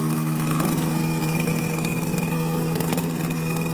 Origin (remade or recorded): remade